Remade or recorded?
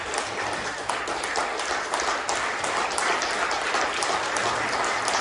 recorded